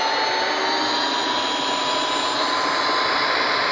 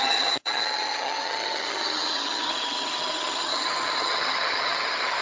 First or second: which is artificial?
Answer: second